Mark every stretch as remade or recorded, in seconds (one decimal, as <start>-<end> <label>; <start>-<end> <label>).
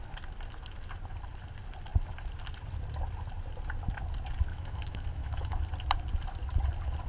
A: 0.0-4.5 recorded; 4.5-5.6 remade; 5.6-7.1 recorded